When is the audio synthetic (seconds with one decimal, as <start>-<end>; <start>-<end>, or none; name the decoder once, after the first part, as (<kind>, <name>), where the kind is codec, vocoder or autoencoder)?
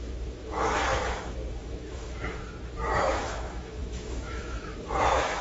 0.0-2.4 (autoencoder, DAC-VAE); 3.1-5.4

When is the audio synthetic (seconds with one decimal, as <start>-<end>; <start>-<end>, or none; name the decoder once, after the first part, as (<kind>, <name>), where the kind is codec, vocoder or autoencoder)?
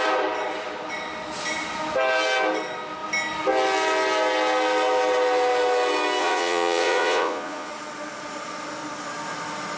6.2-7.7 (vocoder, Vocos)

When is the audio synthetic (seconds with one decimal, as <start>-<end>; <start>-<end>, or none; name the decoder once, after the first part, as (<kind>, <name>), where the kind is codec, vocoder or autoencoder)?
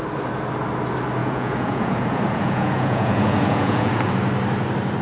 1.2-4.1 (vocoder, Vocos)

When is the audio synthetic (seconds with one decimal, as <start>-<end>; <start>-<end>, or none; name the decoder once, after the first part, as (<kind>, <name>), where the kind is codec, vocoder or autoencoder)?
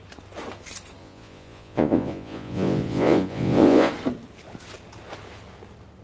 1.0-3.9 (vocoder, Vocos)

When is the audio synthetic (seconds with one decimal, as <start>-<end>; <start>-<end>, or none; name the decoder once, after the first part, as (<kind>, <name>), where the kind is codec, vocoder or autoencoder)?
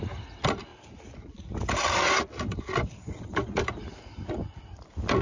none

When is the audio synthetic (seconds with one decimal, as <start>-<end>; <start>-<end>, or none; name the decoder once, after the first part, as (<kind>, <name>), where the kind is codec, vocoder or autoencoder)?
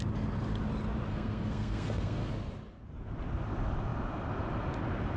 1.1-2.3 (codec, SNAC)